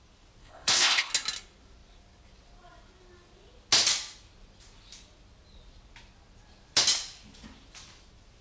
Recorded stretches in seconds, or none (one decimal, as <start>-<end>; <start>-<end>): 0.0-0.4; 1.1-8.4

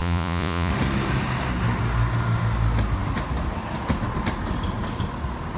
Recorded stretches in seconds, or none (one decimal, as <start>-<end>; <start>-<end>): 0.7-5.6